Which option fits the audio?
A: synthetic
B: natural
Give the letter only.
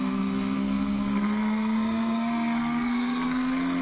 A